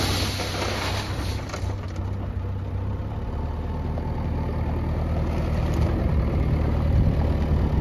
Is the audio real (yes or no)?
yes